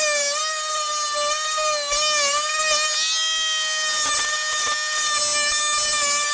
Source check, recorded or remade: recorded